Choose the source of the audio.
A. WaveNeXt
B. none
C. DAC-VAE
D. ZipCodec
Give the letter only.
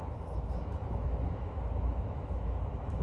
C